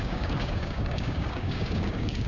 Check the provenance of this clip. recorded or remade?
remade